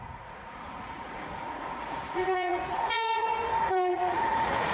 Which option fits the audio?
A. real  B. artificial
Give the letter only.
B